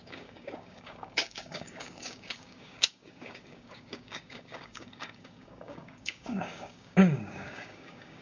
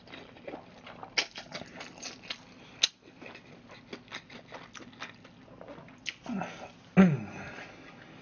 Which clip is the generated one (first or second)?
first